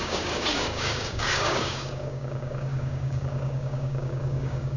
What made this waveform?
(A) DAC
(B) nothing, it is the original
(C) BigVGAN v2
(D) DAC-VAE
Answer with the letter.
A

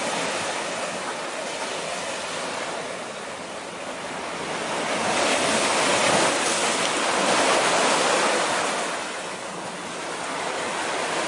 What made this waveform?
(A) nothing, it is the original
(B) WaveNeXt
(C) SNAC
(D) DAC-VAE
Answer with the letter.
A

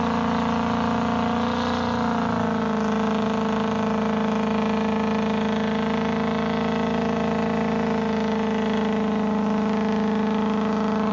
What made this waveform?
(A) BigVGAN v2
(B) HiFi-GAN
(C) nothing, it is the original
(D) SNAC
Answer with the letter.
C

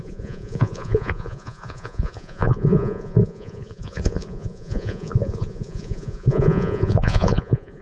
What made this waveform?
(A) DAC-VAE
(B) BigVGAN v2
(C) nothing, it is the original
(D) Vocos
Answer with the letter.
D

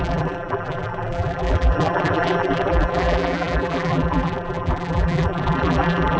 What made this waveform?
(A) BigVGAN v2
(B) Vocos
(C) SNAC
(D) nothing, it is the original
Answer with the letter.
A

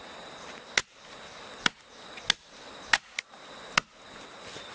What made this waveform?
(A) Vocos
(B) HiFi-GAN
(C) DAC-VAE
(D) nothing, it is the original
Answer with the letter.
D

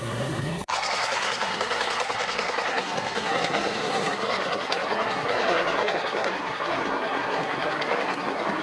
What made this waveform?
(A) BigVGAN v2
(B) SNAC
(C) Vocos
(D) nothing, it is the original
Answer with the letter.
B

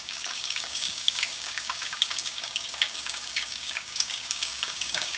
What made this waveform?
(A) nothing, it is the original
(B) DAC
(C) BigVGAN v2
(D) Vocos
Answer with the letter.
B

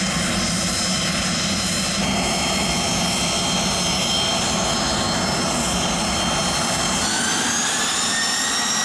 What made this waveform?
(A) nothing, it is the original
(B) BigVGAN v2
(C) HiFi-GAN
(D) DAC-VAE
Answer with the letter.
A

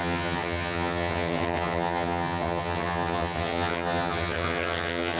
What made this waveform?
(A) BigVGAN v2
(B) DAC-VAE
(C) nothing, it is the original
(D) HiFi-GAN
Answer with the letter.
D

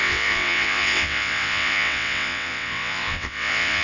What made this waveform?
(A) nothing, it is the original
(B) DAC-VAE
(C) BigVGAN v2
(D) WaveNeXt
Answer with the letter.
D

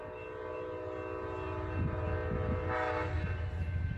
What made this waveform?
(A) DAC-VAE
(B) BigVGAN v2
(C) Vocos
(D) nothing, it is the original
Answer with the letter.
D